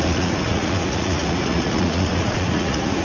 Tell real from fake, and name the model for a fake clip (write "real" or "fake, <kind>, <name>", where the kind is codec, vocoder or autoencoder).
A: fake, vocoder, Vocos